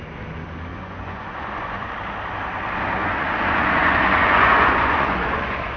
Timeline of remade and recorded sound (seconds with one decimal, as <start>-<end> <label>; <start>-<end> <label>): 0.0-0.7 recorded; 0.7-1.9 remade; 1.9-3.0 recorded; 3.0-5.8 remade